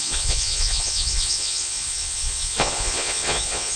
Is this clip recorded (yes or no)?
no